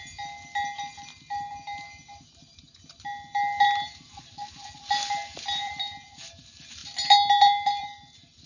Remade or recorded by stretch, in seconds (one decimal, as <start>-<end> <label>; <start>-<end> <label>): 0.0-8.5 recorded